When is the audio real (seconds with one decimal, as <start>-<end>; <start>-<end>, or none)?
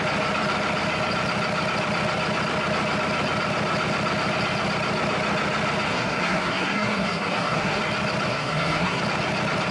0.0-5.9; 7.8-8.3; 9.0-9.7